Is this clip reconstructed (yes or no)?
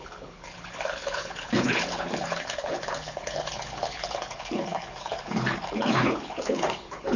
yes